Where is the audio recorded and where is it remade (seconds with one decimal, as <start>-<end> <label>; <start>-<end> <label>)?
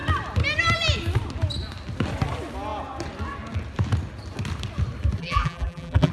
0.0-5.2 recorded; 5.2-6.1 remade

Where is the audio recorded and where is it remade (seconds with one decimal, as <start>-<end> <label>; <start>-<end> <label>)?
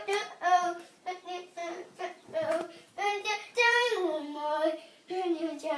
0.0-1.6 recorded; 1.6-5.1 remade; 5.1-5.8 recorded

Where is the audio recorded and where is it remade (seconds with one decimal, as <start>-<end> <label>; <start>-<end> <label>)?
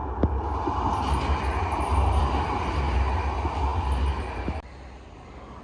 0.0-5.6 recorded